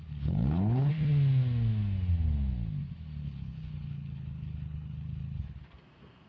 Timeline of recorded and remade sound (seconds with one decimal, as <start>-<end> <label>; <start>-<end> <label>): 0.0-0.9 remade; 0.9-3.2 recorded; 3.2-5.6 remade; 5.6-6.3 recorded